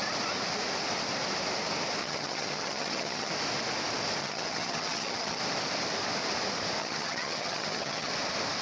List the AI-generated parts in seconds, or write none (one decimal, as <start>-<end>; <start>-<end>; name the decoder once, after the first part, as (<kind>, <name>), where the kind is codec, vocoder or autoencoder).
2.0-3.3 (vocoder, HiFi-GAN); 4.2-5.4; 6.8-8.1